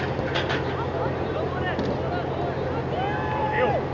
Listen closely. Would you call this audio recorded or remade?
recorded